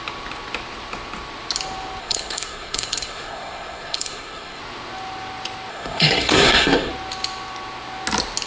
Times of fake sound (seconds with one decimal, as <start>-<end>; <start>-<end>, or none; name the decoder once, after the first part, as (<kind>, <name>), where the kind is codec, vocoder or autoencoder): 2.0-4.6 (codec, SNAC); 5.7-6.9